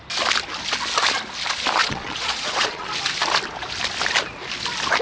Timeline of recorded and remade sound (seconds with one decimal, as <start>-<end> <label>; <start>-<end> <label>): 0.0-1.8 recorded; 1.8-2.9 remade; 2.9-5.0 recorded